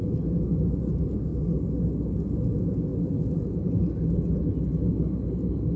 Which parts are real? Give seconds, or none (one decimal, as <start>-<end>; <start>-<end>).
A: 0.0-5.8